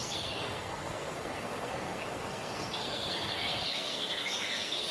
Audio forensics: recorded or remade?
remade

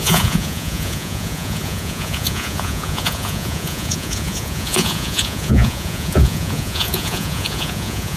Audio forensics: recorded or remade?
remade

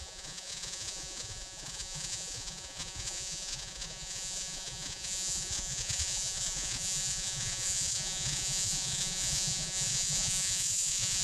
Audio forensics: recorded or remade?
remade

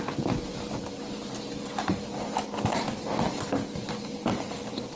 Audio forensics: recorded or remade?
recorded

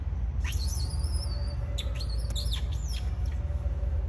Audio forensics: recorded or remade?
recorded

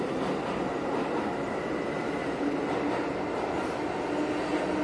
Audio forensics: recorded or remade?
recorded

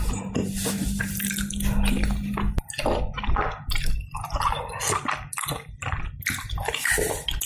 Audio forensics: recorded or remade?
recorded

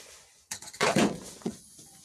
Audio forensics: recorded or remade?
remade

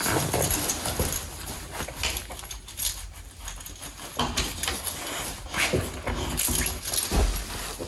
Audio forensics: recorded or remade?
recorded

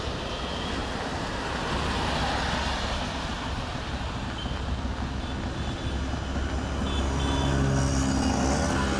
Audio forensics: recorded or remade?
recorded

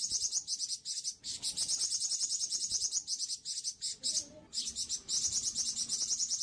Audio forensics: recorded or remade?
recorded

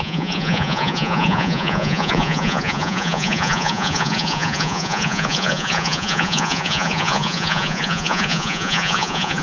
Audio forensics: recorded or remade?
remade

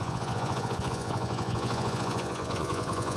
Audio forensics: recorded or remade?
remade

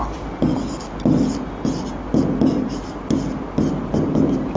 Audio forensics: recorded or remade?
recorded